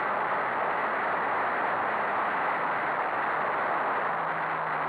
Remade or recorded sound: recorded